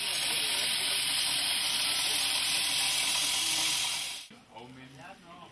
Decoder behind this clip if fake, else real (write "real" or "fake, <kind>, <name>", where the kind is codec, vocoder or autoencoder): real